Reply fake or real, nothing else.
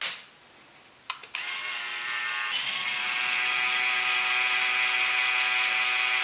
real